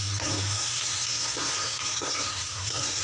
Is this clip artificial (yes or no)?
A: yes